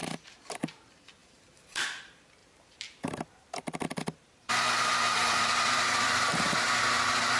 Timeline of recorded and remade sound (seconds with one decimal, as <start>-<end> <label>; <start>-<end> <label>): 0.0-0.6 remade; 0.6-1.2 recorded; 1.2-2.0 remade; 2.0-2.4 recorded; 2.4-6.8 remade; 6.8-7.4 recorded